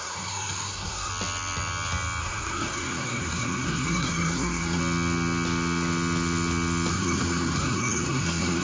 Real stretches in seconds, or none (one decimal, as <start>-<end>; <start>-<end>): 1.1-2.2; 4.8-6.9